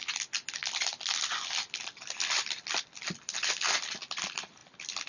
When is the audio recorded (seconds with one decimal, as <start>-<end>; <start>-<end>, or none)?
0.0-5.1